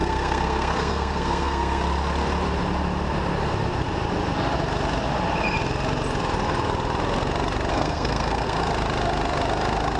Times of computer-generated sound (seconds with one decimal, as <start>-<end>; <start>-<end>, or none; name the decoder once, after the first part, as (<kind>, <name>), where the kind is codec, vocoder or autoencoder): 0.0-1.8 (codec, SNAC); 7.7-8.6